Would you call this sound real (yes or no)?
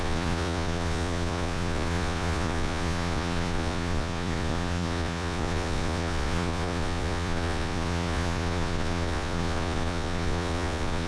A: no